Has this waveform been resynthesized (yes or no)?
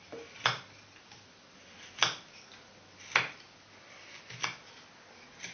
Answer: no